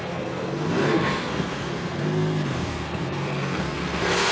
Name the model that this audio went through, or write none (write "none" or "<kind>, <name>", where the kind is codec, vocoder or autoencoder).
codec, SNAC